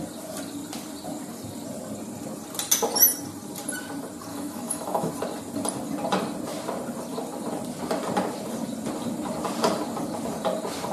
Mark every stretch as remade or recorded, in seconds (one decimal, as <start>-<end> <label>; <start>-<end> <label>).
0.0-4.3 recorded; 4.3-5.1 remade; 5.1-10.9 recorded